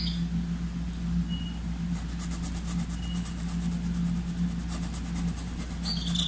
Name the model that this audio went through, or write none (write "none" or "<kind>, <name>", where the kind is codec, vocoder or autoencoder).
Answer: none